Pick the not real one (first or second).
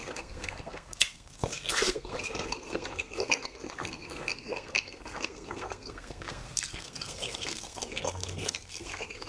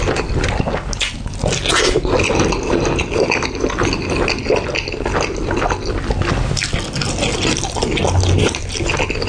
first